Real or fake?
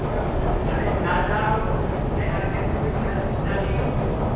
real